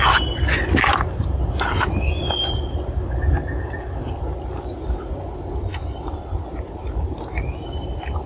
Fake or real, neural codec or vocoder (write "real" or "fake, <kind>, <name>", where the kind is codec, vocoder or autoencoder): real